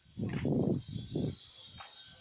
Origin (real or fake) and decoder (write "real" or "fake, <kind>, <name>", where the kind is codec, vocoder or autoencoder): real